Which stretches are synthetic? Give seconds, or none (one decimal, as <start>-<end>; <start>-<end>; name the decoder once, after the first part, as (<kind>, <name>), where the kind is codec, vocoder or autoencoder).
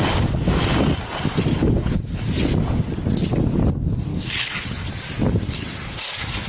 1.5-2.2 (codec, HILCodec); 4.1-4.9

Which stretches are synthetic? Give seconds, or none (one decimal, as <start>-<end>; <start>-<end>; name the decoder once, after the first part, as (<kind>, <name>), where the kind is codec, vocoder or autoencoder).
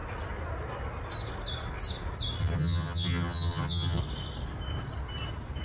2.4-4.0 (vocoder, HiFi-GAN)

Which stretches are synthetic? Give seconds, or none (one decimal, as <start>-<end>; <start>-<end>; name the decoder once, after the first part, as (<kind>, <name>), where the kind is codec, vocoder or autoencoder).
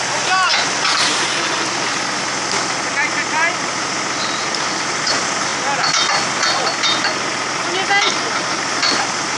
none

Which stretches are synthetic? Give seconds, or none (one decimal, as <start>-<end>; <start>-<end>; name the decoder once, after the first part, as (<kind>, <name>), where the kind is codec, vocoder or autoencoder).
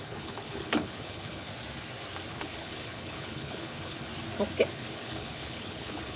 0.0-1.5 (codec, HILCodec); 2.3-4.1; 4.7-6.2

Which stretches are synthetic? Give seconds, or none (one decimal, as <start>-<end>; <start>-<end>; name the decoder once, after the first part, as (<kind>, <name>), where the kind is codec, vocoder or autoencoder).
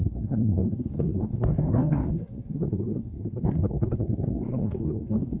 0.0-5.4 (codec, SNAC)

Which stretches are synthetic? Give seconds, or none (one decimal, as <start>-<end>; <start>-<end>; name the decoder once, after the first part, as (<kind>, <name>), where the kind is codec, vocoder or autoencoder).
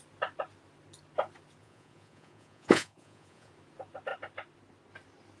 1.6-3.5 (vocoder, Vocos)